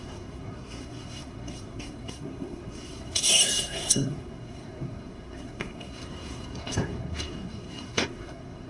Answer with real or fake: fake